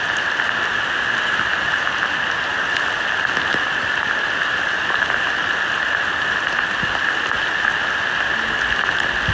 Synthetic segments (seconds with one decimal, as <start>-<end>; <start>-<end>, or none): none